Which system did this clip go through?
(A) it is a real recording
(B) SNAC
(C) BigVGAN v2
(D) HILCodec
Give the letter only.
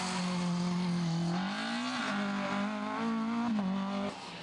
A